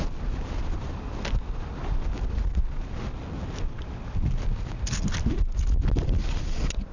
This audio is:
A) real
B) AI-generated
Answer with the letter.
A